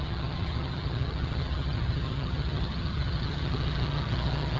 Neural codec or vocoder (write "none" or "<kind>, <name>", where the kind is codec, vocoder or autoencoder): vocoder, HiFi-GAN